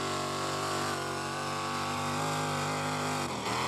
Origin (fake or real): real